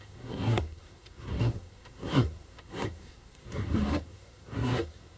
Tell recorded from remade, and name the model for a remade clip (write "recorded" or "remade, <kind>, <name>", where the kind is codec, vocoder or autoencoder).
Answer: remade, codec, SNAC